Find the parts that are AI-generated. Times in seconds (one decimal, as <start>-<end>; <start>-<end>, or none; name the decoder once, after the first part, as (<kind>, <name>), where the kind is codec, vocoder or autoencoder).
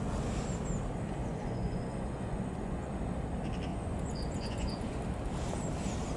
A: 1.2-3.0 (vocoder, Vocos); 3.7-5.0